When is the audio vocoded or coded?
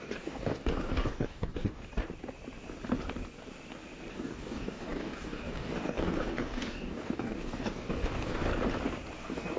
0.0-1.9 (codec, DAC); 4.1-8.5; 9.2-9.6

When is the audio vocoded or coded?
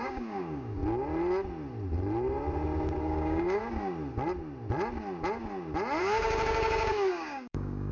0.0-0.8 (codec, DAC); 3.0-3.6; 6.0-7.9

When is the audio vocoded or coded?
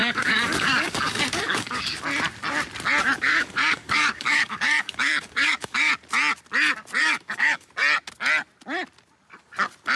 0.0-2.0 (codec, DAC); 3.0-5.9; 7.0-7.7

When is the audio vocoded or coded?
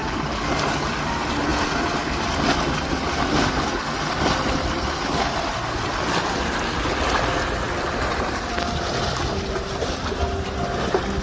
none